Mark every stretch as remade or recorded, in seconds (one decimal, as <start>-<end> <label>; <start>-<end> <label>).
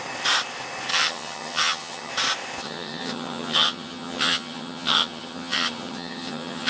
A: 0.0-0.9 recorded; 0.9-2.1 remade; 2.1-2.6 recorded; 2.6-6.7 remade